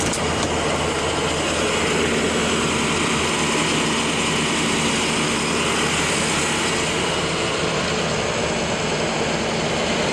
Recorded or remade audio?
recorded